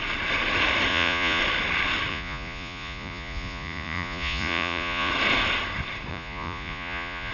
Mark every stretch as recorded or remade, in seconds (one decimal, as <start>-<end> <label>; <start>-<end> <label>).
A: 0.0-0.9 recorded; 0.9-1.4 remade; 1.4-2.1 recorded; 2.1-5.1 remade; 5.1-6.1 recorded; 6.1-7.3 remade